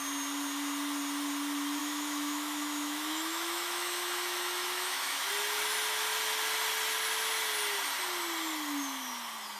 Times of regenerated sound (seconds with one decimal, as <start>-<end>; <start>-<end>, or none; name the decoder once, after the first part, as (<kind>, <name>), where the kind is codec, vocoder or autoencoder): 1.8-5.3 (autoencoder, DAC-VAE)